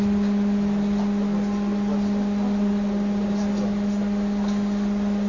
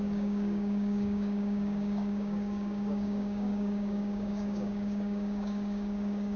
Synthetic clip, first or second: second